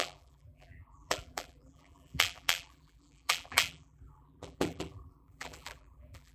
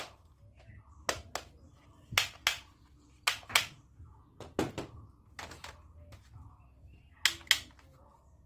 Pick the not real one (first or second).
first